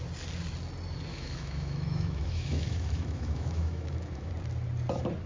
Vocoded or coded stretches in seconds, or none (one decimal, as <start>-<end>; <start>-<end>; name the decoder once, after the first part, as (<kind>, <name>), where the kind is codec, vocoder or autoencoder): 1.1-4.3 (autoencoder, DAC-VAE)